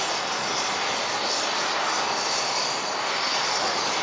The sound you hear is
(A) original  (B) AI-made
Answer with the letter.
A